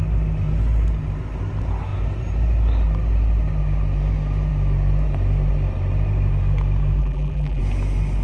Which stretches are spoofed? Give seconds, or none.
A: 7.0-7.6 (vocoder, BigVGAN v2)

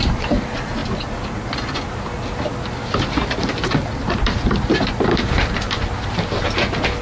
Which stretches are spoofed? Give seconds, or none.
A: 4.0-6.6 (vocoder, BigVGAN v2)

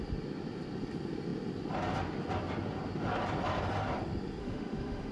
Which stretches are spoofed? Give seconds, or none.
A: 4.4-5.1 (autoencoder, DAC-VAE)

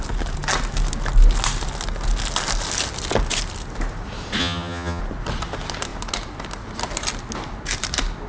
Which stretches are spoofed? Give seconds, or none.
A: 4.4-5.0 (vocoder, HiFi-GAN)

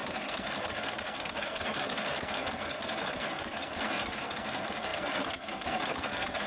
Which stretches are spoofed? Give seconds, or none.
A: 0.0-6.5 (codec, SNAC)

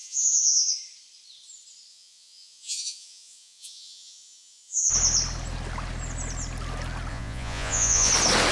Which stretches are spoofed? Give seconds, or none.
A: 0.0-0.7 (vocoder, Vocos); 1.9-4.9; 7.1-8.1